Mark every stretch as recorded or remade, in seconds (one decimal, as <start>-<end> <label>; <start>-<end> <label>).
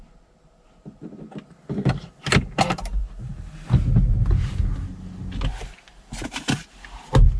0.0-7.4 recorded